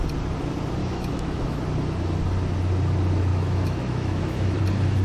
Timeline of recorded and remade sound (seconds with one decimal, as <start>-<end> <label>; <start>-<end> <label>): 0.0-0.8 recorded; 0.8-1.6 remade; 1.6-3.3 recorded; 3.3-4.6 remade; 4.6-5.0 recorded

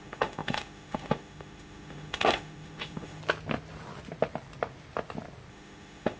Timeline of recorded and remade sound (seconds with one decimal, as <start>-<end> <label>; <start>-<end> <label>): 0.0-3.2 remade; 3.2-5.5 recorded; 5.5-6.2 remade

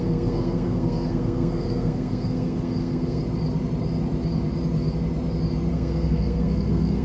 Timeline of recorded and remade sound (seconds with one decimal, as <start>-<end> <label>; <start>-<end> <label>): 0.0-3.2 remade; 3.2-5.7 recorded; 5.7-7.0 remade

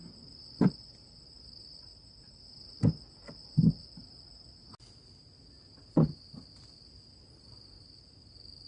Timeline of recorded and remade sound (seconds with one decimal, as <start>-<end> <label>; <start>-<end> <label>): 0.0-8.7 recorded

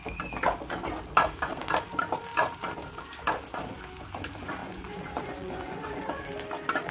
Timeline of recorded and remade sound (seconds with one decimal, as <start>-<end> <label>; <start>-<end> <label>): 0.0-4.6 recorded; 4.6-6.2 remade; 6.2-6.9 recorded